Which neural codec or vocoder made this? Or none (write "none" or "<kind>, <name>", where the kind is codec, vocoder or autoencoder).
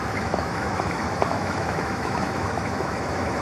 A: autoencoder, DAC-VAE